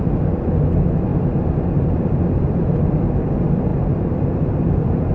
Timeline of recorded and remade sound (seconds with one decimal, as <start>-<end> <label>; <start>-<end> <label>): 0.0-5.1 remade